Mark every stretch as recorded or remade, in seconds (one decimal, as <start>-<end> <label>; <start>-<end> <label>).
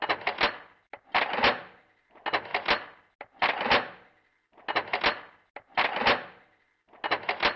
0.0-7.6 recorded